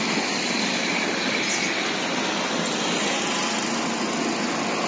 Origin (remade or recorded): recorded